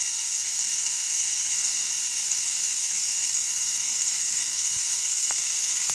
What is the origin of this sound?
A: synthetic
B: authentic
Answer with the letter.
A